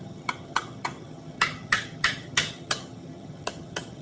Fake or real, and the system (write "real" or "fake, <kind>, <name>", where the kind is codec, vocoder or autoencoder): fake, vocoder, HiFi-GAN